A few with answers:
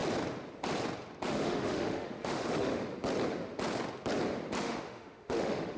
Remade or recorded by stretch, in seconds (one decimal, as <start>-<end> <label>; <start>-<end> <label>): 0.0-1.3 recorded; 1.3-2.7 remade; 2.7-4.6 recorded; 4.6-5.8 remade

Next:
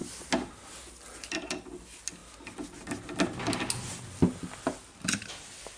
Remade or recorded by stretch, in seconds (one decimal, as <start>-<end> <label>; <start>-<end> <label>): 0.0-5.8 recorded

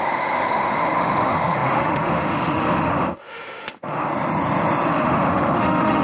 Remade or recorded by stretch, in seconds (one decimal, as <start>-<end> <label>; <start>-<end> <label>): 0.0-4.1 remade; 4.1-4.9 recorded; 4.9-6.0 remade

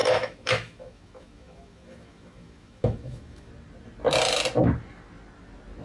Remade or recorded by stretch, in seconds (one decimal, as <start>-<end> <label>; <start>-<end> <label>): 0.0-3.5 remade; 3.5-5.8 recorded

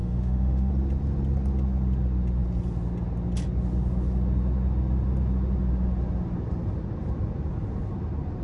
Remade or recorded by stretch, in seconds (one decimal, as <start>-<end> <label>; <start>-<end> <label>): 0.0-0.7 remade; 0.7-8.4 recorded

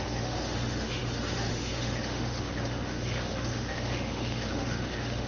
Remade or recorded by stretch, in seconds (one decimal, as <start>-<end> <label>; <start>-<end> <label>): 0.0-5.3 remade